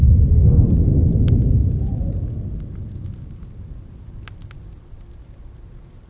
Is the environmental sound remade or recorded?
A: recorded